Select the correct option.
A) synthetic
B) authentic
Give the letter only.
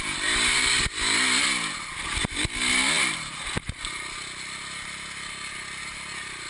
B